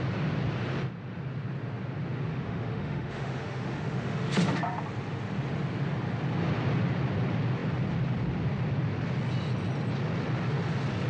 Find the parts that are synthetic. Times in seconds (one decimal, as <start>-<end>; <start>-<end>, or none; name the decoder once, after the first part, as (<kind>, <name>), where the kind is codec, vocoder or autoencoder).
2.3-4.6 (autoencoder, DAC-VAE)

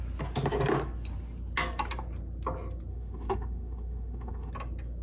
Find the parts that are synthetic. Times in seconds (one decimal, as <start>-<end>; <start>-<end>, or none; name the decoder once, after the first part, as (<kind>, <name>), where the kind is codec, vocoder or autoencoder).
2.9-4.5 (autoencoder, DAC-VAE)

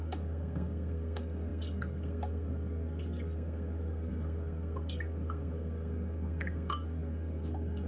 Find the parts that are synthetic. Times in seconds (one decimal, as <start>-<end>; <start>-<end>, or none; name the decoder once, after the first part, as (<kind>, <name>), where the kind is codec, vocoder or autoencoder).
0.0-7.9 (codec, SNAC)

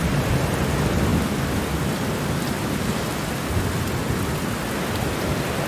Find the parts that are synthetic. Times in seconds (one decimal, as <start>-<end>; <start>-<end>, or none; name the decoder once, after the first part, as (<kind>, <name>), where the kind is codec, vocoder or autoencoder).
1.1-2.8 (vocoder, BigVGAN v2)